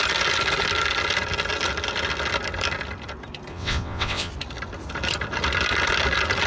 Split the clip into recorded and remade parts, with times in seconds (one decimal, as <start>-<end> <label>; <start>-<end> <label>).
0.0-3.5 recorded; 3.5-4.3 remade; 4.3-6.5 recorded

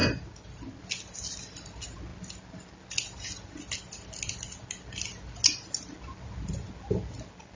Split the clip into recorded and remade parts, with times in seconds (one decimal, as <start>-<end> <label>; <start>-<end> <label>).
0.0-7.6 recorded

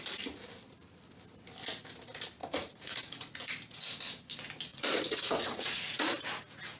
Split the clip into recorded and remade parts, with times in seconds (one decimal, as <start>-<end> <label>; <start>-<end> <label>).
0.0-2.4 recorded; 2.4-3.4 remade; 3.4-4.7 recorded; 4.7-6.2 remade; 6.2-6.8 recorded